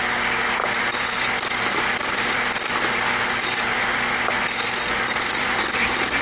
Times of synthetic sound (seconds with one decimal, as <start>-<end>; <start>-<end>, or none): 0.0-6.2